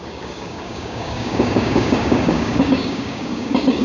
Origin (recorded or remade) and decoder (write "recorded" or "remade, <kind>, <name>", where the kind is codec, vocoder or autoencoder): remade, codec, DAC